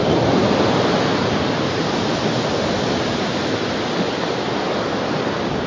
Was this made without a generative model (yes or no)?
yes